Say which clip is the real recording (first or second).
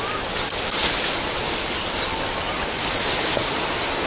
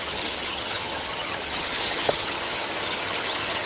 first